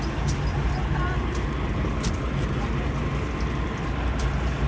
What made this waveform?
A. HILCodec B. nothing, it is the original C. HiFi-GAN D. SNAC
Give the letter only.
B